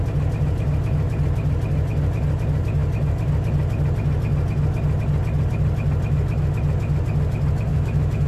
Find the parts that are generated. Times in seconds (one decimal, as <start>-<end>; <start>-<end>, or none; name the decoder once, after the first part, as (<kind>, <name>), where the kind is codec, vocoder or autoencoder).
7.7-8.3 (autoencoder, DAC-VAE)